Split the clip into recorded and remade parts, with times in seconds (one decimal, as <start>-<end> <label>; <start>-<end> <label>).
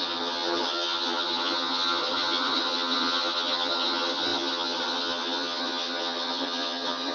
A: 0.0-7.1 remade